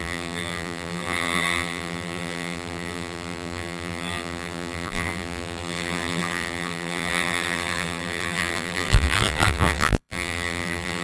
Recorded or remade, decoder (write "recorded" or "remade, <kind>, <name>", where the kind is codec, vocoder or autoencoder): remade, vocoder, BigVGAN v2